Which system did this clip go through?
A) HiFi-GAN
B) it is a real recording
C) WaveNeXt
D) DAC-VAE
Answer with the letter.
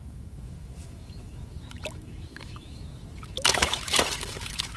D